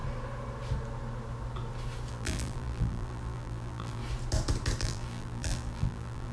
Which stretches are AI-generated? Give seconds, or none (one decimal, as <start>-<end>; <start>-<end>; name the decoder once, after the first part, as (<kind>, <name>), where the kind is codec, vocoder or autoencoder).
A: 2.1-4.0 (vocoder, BigVGAN v2); 4.8-6.3